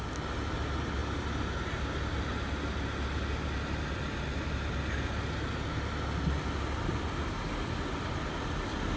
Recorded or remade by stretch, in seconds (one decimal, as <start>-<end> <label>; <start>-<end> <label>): 0.0-9.0 recorded